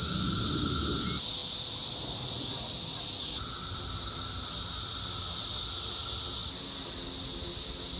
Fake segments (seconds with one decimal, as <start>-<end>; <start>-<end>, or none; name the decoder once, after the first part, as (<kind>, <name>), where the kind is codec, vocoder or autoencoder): none